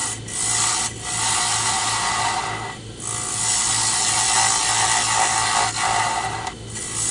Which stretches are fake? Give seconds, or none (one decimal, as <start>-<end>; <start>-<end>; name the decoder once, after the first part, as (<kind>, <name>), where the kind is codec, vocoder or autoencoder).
none